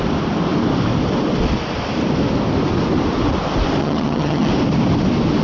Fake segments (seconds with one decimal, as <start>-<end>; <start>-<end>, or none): 3.8-4.5